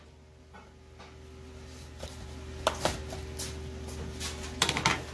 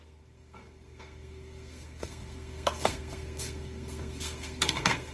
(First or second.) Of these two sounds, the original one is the first